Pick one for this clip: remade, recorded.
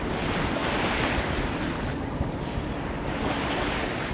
recorded